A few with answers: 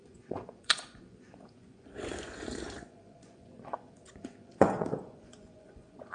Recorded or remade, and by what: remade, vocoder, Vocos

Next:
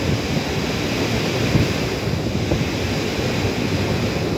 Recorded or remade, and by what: recorded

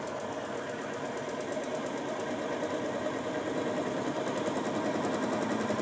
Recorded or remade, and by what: recorded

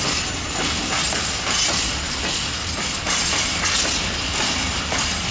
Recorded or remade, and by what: recorded